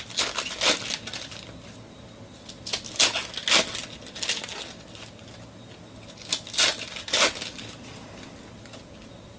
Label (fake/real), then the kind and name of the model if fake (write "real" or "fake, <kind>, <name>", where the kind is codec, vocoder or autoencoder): real